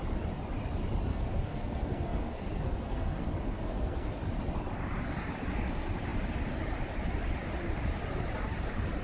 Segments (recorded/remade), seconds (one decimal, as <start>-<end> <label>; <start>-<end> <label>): 0.0-1.1 recorded; 1.1-4.2 remade; 4.2-9.0 recorded